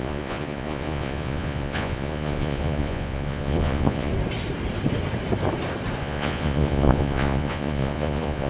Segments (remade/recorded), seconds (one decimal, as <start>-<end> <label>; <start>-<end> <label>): 0.0-4.1 remade; 4.1-6.0 recorded; 6.0-8.5 remade